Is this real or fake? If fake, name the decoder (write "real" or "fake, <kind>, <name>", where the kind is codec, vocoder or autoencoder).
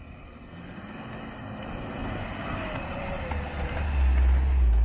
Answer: real